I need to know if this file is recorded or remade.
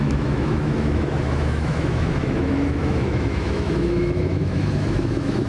remade